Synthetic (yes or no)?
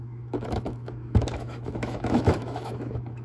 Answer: yes